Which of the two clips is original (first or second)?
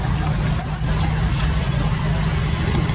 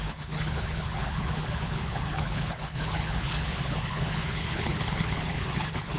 first